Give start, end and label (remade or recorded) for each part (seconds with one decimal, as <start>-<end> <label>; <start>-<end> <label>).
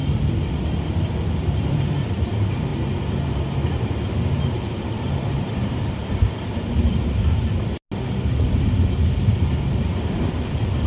0.0-0.8 recorded; 0.8-2.7 remade; 2.7-4.4 recorded; 4.4-6.0 remade; 6.0-8.5 recorded; 8.5-10.9 remade